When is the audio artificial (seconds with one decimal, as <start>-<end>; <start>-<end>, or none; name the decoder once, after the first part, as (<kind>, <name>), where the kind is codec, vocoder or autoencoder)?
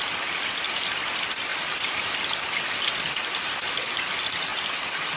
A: 1.5-2.1 (vocoder, BigVGAN v2)